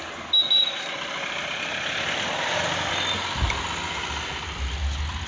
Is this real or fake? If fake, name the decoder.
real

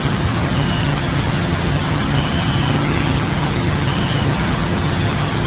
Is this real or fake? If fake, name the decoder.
fake, vocoder, HiFi-GAN